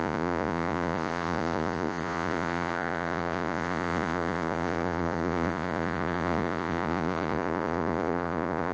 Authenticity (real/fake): fake